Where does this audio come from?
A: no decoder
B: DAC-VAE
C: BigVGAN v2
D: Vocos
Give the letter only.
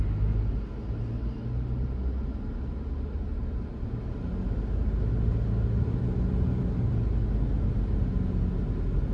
A